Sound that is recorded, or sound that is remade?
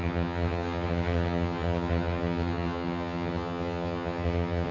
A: remade